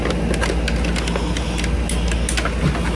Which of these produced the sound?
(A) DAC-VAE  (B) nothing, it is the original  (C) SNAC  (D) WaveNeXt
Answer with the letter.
B